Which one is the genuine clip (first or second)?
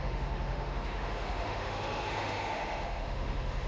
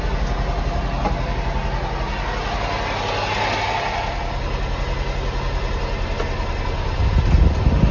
second